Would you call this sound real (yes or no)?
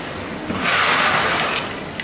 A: yes